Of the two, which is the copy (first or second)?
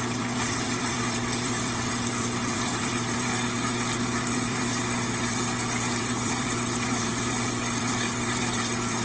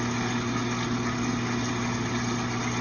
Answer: first